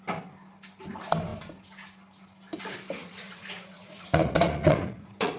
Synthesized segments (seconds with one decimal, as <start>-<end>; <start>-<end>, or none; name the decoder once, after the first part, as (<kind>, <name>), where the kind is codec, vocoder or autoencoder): 3.0-5.4 (vocoder, Vocos)